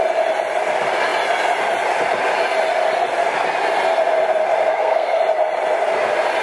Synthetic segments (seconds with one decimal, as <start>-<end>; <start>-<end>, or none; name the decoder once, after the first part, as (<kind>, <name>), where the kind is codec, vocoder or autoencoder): 4.7-5.2 (codec, SNAC)